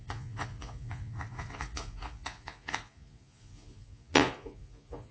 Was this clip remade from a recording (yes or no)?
yes